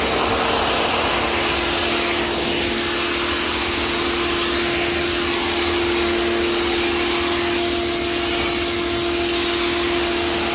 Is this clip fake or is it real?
real